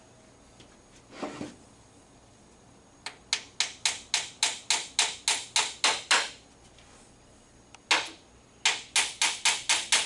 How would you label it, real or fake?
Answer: real